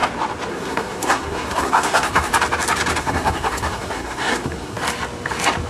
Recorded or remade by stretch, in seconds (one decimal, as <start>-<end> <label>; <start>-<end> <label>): 0.0-0.5 recorded; 0.5-2.3 remade; 2.3-3.0 recorded; 3.0-4.8 remade; 4.8-5.7 recorded